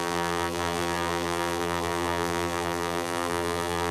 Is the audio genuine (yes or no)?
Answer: no